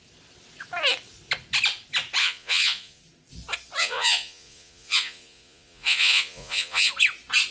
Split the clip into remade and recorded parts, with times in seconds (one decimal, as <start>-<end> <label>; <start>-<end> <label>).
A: 0.0-2.2 recorded; 2.2-3.0 remade; 3.0-3.8 recorded; 3.8-6.9 remade; 6.9-7.5 recorded